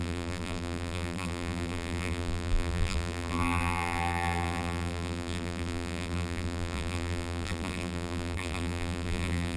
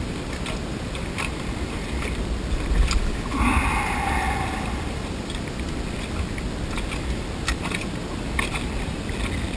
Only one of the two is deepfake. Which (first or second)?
first